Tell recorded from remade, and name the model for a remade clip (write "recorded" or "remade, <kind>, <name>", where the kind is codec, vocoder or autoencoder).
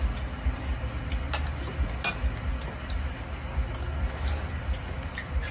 recorded